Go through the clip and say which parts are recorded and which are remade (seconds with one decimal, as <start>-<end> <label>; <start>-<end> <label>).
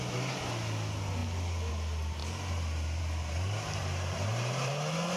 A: 0.0-3.8 recorded; 3.8-4.7 remade; 4.7-5.2 recorded